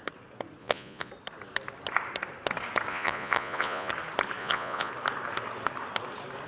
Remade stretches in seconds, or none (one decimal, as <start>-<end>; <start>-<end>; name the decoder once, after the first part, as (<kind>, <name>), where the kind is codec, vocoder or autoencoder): 0.6-1.1 (vocoder, Vocos); 2.9-3.9; 4.4-4.9